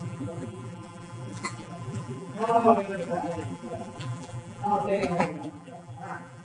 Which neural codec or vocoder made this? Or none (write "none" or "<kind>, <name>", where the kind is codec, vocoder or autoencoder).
vocoder, BigVGAN v2